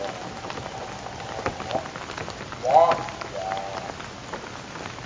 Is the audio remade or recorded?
recorded